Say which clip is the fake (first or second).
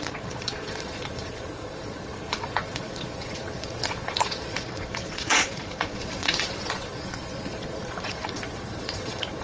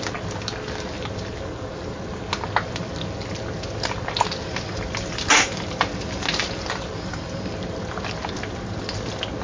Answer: first